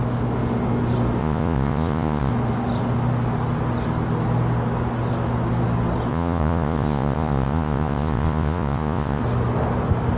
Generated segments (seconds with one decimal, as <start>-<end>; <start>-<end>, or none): 1.2-2.3; 6.1-9.2